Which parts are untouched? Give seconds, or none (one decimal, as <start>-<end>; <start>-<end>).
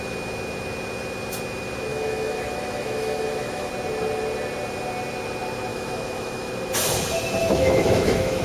0.0-1.9; 3.7-5.7; 6.5-7.4